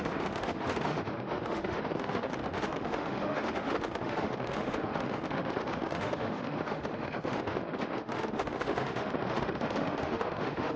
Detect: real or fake fake